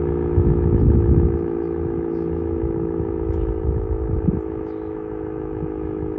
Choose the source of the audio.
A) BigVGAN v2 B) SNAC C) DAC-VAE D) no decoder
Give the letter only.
C